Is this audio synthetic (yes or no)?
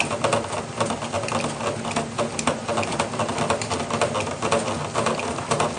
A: no